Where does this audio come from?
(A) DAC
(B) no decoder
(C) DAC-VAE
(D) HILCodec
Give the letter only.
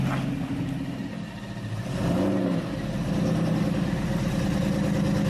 B